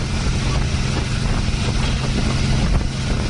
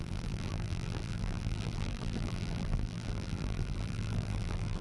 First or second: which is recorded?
first